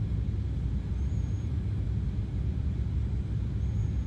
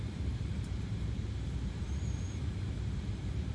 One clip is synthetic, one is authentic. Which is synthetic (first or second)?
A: second